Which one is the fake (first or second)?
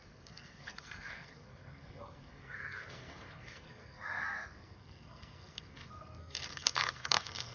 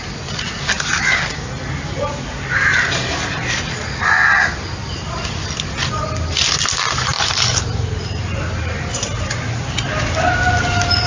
first